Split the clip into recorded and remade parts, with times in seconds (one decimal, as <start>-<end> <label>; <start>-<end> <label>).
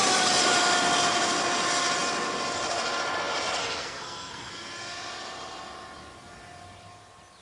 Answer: 0.0-3.6 recorded; 3.6-4.5 remade; 4.5-7.4 recorded